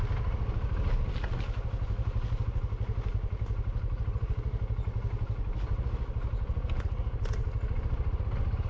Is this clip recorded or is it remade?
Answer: recorded